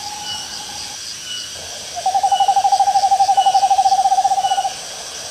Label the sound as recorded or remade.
recorded